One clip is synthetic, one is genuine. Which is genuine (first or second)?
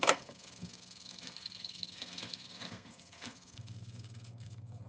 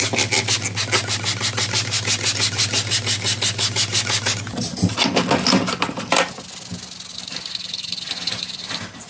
second